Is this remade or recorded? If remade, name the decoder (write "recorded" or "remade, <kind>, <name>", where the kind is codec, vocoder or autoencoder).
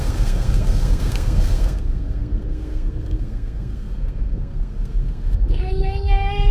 remade, codec, SNAC